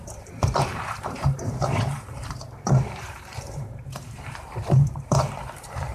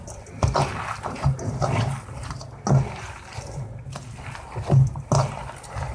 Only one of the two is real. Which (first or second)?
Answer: second